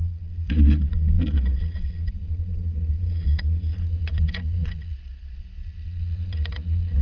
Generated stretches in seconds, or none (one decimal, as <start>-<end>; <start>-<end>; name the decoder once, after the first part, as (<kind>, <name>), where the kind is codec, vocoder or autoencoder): 0.0-7.0 (vocoder, Vocos)